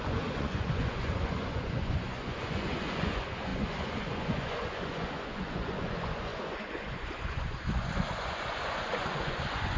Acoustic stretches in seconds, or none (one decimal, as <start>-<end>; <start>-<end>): none